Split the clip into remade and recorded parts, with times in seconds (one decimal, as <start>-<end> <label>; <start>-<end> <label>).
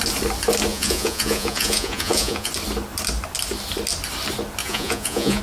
0.0-0.7 recorded; 0.7-2.5 remade; 2.5-4.6 recorded; 4.6-5.4 remade